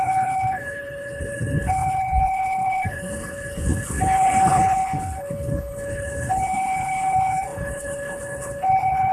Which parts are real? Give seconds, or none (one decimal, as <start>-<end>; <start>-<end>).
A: none